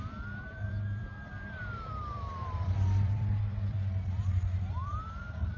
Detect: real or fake fake